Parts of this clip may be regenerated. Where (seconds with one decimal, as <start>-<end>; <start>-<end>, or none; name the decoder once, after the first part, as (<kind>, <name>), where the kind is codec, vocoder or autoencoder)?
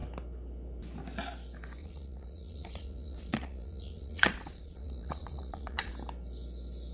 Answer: 1.8-5.9 (vocoder, Vocos)